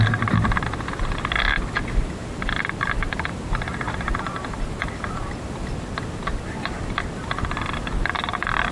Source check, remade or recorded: recorded